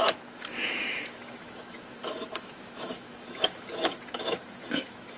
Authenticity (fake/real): fake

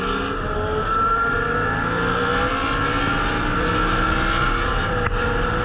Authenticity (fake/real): real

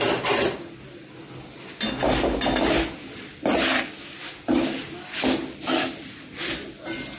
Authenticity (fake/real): real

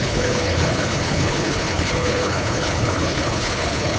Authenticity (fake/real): fake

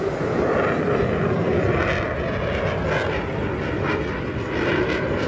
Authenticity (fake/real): real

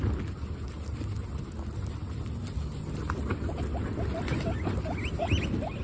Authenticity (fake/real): real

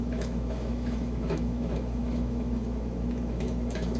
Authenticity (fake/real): fake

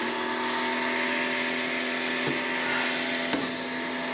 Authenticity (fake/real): real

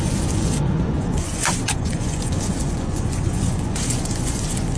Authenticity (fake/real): fake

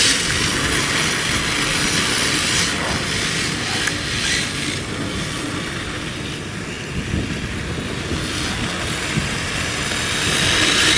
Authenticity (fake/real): real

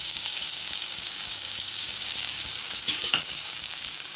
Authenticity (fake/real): fake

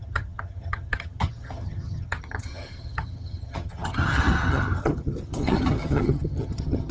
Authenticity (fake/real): fake